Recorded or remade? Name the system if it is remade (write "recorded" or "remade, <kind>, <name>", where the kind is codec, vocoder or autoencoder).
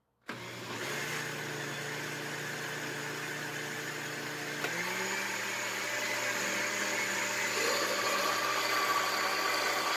recorded